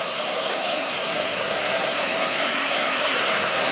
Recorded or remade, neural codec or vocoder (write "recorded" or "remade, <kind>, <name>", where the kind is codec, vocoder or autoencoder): remade, codec, SNAC